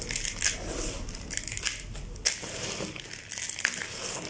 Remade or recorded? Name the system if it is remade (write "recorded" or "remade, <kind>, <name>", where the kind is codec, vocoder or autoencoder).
recorded